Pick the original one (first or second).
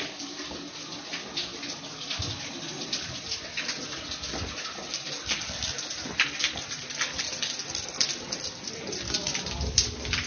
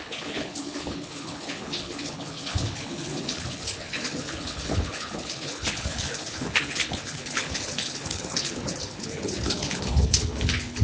first